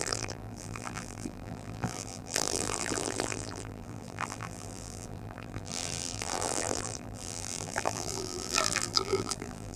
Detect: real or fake fake